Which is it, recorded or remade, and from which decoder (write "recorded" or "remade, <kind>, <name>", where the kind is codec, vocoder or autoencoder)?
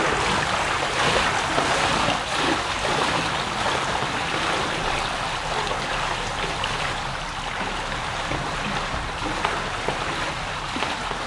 recorded